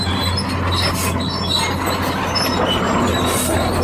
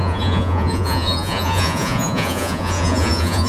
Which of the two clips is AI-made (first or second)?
second